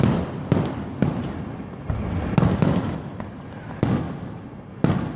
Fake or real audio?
real